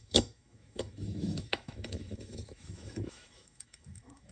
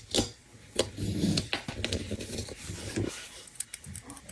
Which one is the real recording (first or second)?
second